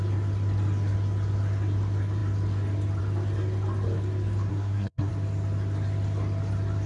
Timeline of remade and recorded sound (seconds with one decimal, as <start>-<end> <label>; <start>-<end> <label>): 0.0-4.5 recorded; 4.5-5.1 remade; 5.1-6.9 recorded